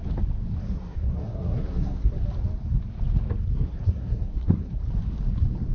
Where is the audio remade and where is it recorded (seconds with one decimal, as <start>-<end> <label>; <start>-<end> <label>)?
0.0-0.6 recorded; 0.6-2.1 remade; 2.1-3.5 recorded; 3.5-4.8 remade; 4.8-5.7 recorded